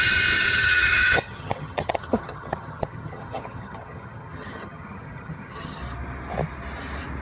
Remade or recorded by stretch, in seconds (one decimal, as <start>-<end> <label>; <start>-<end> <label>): 0.0-5.8 remade; 5.8-7.2 recorded